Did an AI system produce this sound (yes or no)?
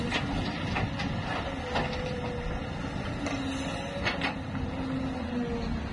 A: no